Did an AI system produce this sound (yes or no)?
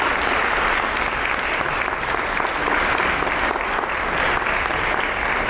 no